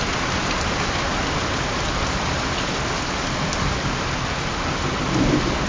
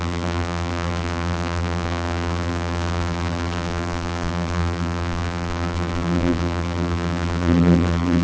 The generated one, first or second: second